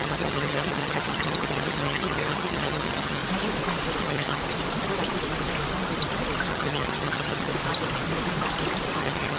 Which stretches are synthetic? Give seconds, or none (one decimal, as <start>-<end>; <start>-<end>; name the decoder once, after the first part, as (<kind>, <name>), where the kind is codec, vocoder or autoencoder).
0.0-3.2 (vocoder, HiFi-GAN); 4.0-4.4; 6.5-7.5; 9.0-9.4